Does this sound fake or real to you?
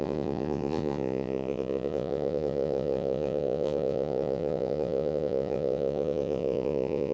fake